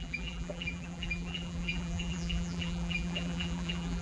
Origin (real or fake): fake